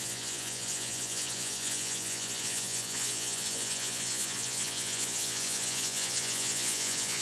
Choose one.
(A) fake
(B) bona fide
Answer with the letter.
A